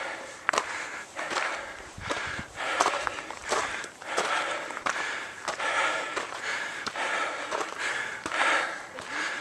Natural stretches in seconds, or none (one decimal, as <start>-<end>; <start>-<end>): none